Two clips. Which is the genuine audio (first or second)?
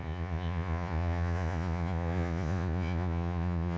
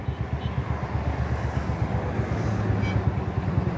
second